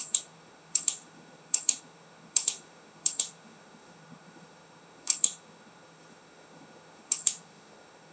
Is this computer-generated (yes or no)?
yes